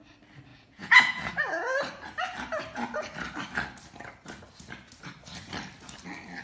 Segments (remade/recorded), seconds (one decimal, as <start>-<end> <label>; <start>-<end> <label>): 0.0-0.5 recorded; 0.5-1.3 remade; 1.3-6.4 recorded